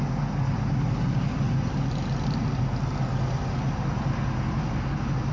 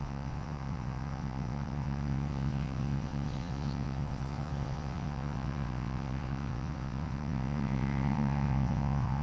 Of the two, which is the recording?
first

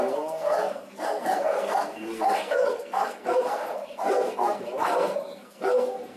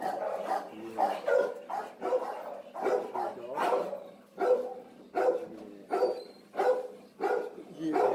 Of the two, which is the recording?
second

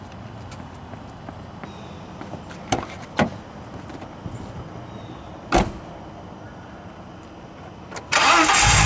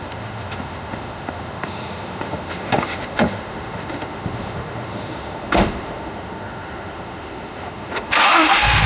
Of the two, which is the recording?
first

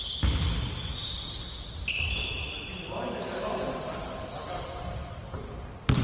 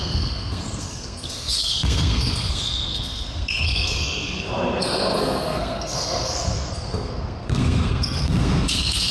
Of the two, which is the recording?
first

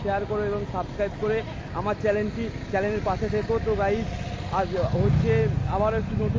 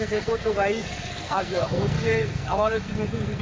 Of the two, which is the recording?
first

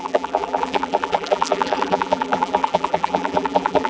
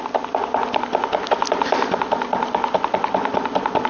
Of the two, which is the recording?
second